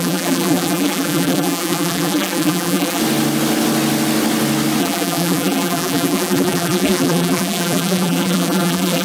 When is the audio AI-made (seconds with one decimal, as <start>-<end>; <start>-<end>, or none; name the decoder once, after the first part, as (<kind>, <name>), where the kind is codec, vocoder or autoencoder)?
0.0-3.0 (vocoder, BigVGAN v2); 4.8-9.0